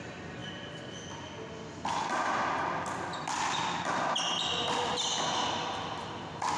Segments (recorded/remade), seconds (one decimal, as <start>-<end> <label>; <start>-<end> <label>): 0.0-6.6 recorded